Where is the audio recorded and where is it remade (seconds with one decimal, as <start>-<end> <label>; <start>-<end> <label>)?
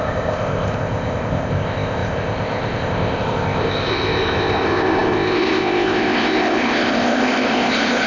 0.0-8.1 remade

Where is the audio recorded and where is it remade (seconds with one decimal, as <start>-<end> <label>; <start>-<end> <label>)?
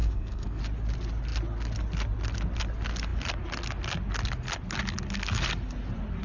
0.0-0.6 remade; 0.6-6.2 recorded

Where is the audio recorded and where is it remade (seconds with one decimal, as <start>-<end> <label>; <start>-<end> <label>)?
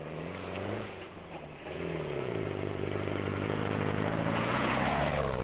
0.0-5.4 remade